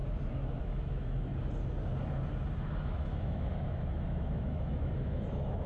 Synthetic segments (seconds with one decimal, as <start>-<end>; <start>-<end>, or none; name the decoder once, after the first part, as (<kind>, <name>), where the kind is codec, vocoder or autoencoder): 0.6-1.3 (autoencoder, DAC-VAE); 2.8-5.7